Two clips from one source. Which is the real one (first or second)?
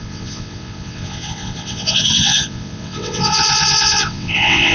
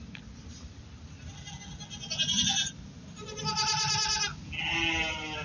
second